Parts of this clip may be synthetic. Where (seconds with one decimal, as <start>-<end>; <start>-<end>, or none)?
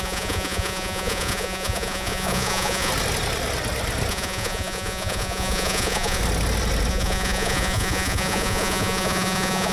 0.0-2.9; 4.1-6.2; 6.9-9.7